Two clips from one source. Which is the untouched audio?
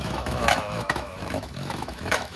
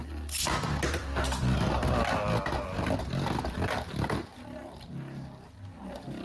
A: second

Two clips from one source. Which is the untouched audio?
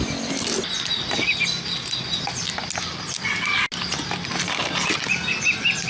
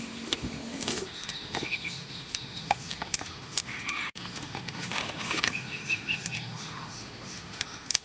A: first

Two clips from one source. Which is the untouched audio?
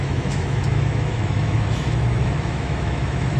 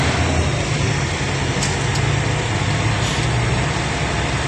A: second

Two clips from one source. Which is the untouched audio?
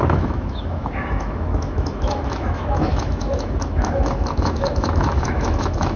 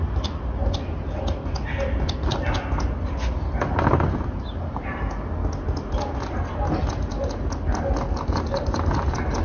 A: second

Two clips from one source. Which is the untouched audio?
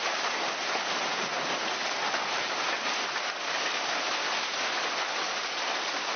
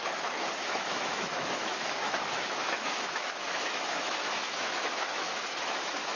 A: first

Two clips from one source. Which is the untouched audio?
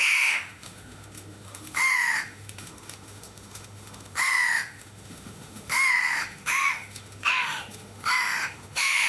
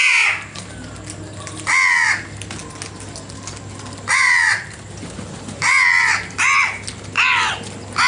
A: second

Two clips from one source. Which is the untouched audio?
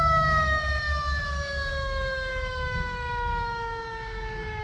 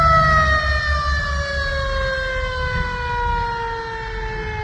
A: second